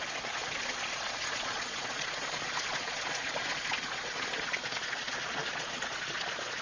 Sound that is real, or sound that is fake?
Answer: fake